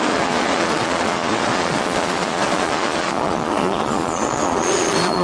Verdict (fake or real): fake